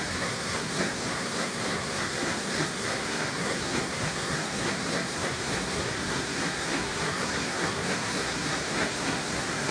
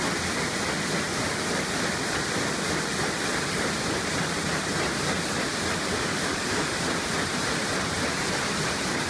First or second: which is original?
second